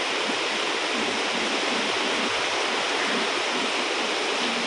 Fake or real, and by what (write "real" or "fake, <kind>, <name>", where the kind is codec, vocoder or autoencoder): real